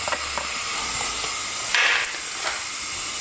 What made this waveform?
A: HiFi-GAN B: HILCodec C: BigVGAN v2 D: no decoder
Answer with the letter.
D